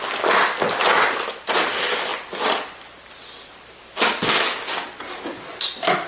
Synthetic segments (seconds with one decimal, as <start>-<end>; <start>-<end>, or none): none